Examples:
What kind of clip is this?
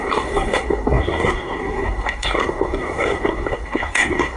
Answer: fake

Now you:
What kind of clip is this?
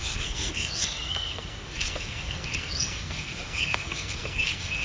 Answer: fake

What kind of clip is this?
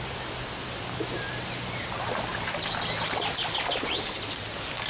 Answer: real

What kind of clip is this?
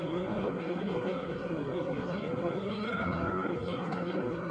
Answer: fake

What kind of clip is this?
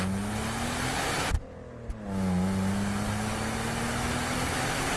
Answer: real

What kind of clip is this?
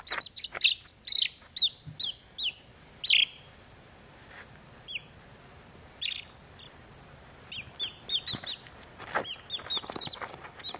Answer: real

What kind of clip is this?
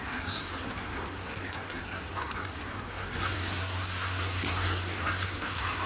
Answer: fake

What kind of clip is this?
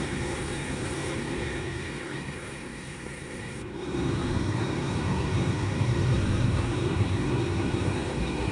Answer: fake